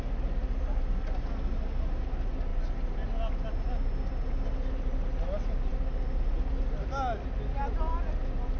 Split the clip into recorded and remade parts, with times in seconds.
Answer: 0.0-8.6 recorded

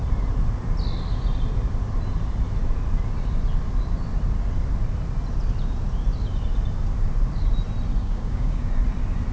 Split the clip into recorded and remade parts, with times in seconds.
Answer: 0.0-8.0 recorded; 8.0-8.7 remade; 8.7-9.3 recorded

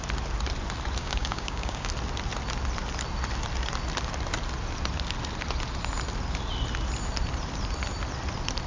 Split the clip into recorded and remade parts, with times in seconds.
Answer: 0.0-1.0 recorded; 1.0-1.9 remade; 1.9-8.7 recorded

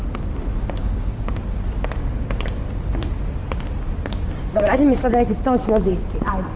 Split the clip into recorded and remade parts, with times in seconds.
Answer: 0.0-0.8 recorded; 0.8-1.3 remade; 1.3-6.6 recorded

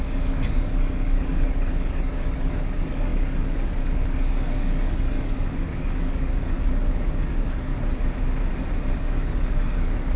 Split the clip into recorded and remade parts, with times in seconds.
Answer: 0.0-7.7 remade; 7.7-9.0 recorded; 9.0-10.2 remade

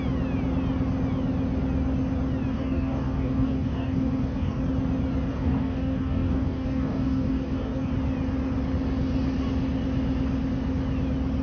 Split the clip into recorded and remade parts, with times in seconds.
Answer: 0.0-2.5 recorded; 2.5-4.6 remade; 4.6-5.3 recorded; 5.3-7.9 remade; 7.9-11.4 recorded

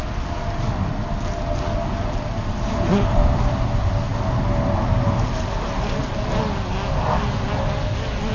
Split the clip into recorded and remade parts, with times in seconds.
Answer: 0.0-8.3 recorded